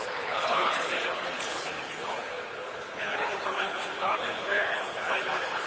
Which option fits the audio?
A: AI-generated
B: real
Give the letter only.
A